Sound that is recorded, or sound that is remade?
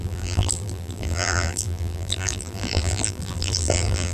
remade